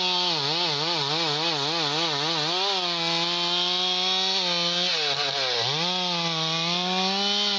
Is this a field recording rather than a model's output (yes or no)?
yes